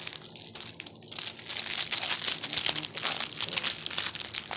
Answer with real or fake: real